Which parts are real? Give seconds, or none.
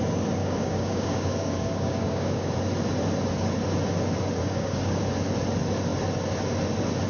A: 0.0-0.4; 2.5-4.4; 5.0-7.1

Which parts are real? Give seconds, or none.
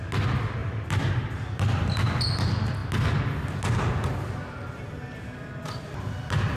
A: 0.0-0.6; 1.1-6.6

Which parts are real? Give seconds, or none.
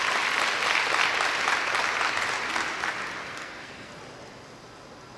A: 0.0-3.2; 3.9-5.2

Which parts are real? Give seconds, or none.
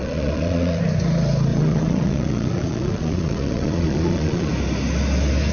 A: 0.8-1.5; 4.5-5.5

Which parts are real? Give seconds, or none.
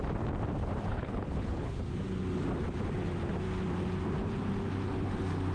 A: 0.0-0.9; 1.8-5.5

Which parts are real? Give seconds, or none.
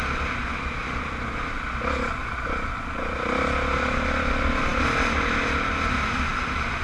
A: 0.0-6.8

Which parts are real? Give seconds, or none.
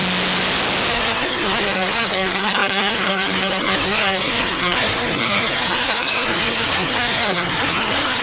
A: 0.0-0.9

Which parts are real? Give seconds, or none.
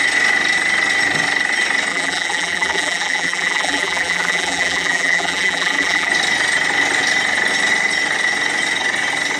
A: 0.0-1.9; 6.1-9.4